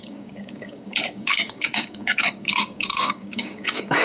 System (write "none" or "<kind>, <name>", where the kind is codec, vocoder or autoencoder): codec, DAC